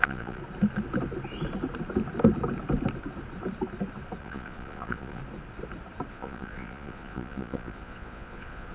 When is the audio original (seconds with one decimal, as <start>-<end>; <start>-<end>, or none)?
0.4-4.2; 5.2-6.1